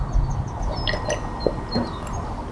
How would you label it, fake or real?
real